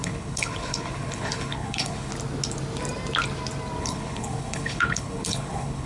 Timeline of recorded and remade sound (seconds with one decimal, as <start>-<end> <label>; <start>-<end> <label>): 0.0-2.1 remade; 2.1-3.8 recorded; 3.8-5.9 remade